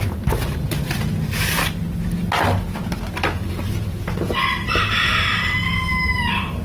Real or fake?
real